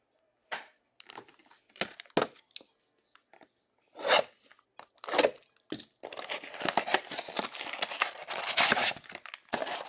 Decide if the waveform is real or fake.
real